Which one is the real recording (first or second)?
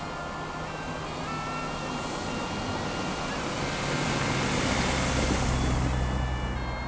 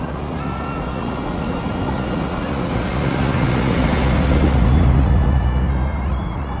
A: first